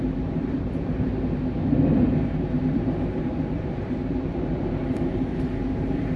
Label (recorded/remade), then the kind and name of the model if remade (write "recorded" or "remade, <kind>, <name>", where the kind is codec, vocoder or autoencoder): remade, vocoder, BigVGAN v2